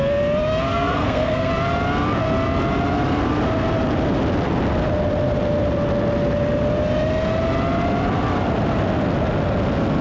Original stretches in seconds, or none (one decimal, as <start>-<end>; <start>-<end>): 0.0-0.7; 1.5-10.0